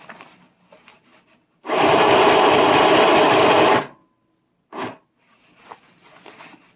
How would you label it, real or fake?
real